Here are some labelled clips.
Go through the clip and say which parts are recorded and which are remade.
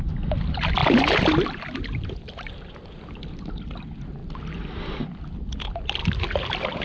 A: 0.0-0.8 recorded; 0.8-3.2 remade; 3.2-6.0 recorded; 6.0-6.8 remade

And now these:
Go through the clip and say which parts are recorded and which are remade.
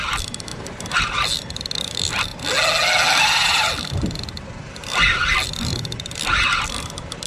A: 0.0-0.5 remade; 0.5-1.0 recorded; 1.0-2.3 remade; 2.3-3.2 recorded; 3.2-5.2 remade; 5.2-6.1 recorded; 6.1-7.3 remade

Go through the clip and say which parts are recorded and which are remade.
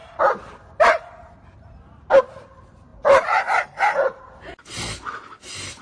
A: 0.0-5.8 remade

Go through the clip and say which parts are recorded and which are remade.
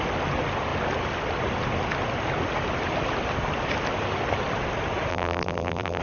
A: 0.0-5.1 recorded; 5.1-6.0 remade